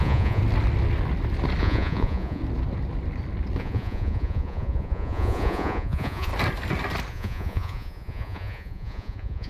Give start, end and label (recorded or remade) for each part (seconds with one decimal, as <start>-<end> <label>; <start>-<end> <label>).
0.0-0.4 remade; 0.4-1.6 recorded; 1.6-2.4 remade; 2.4-3.6 recorded; 3.6-6.3 remade; 6.3-7.1 recorded; 7.1-9.5 remade